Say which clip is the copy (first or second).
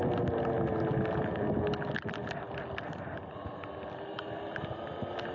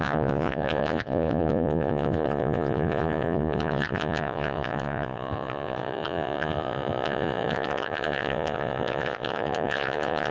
second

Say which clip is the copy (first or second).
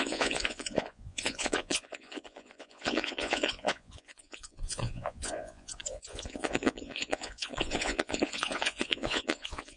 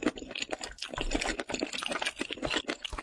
first